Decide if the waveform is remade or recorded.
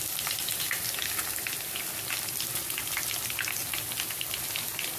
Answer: recorded